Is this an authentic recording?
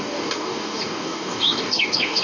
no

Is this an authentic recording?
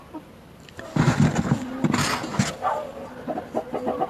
yes